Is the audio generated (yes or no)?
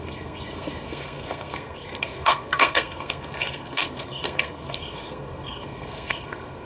yes